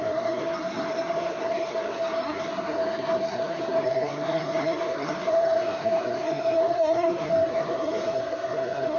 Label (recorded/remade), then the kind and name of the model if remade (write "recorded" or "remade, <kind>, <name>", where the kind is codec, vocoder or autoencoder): remade, codec, SNAC